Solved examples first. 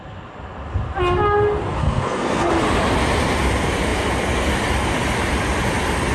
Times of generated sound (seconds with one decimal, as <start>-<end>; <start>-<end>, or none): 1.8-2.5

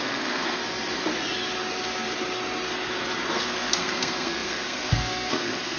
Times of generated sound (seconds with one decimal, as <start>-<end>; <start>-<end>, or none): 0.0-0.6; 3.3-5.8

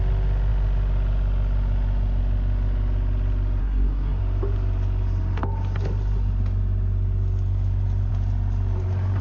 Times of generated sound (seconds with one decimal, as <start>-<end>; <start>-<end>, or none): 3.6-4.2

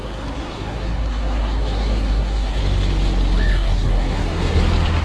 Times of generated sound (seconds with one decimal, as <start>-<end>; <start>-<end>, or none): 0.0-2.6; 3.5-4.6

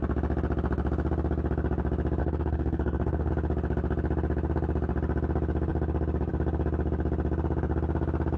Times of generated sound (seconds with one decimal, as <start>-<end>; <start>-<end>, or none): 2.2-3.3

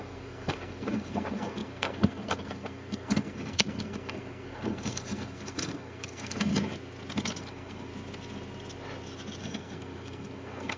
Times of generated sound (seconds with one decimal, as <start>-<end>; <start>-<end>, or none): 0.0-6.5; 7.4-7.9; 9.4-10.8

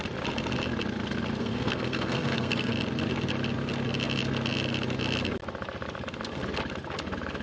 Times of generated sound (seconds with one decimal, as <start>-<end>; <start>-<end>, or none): 1.4-2.7